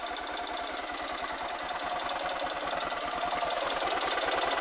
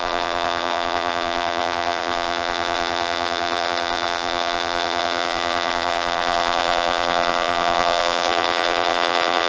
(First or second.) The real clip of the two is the first